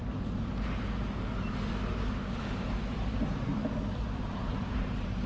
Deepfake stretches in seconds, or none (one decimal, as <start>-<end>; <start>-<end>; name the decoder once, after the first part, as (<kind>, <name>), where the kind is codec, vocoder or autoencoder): 2.9-3.5 (vocoder, BigVGAN v2); 4.0-5.3